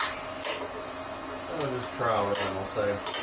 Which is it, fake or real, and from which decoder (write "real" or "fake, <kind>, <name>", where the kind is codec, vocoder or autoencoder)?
real